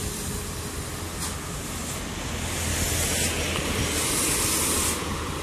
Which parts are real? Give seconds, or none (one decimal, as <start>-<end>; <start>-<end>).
0.0-5.4

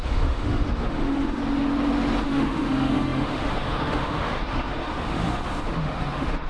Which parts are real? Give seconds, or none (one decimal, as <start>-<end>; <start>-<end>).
1.4-2.2

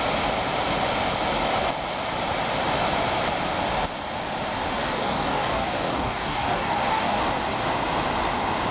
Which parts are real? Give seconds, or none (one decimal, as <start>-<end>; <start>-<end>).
0.0-4.8; 7.2-8.7

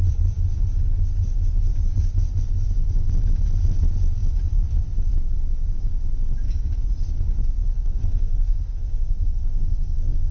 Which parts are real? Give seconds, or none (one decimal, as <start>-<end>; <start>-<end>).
0.0-7.6